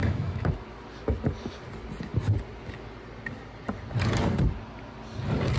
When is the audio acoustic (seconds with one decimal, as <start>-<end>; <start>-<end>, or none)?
0.5-5.6